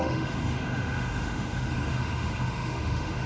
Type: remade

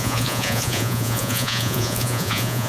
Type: remade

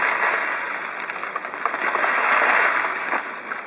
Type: recorded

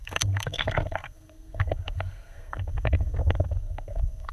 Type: remade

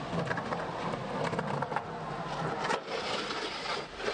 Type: recorded